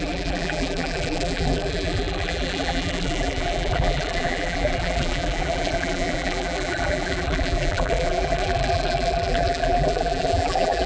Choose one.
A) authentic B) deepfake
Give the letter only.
B